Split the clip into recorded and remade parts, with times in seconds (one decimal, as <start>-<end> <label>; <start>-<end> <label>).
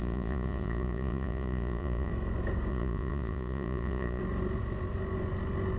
0.0-2.1 remade; 2.1-2.7 recorded; 2.7-4.2 remade; 4.2-5.8 recorded